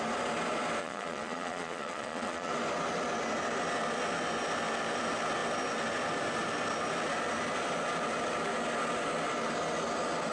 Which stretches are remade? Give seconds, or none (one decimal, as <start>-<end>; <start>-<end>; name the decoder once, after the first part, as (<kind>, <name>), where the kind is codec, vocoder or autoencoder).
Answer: 0.8-2.5 (vocoder, Vocos)